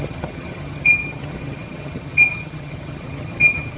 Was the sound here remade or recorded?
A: remade